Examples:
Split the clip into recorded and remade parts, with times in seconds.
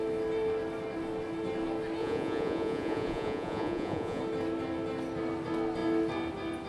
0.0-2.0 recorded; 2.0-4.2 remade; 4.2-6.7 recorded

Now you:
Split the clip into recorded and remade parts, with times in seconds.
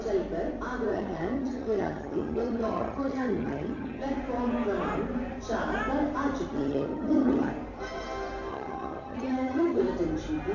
0.0-0.9 recorded; 0.9-4.0 remade; 4.0-6.5 recorded; 6.5-7.5 remade; 7.5-8.5 recorded; 8.5-9.8 remade; 9.8-10.5 recorded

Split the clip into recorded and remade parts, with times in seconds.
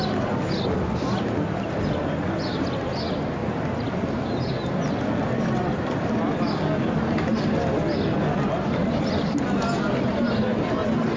0.0-11.2 recorded